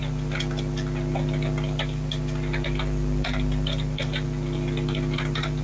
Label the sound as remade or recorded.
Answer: recorded